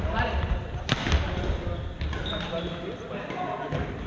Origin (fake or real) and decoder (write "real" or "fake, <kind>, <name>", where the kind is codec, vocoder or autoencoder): real